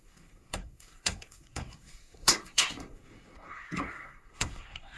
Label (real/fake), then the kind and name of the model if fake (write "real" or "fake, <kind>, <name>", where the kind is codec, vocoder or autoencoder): fake, codec, SNAC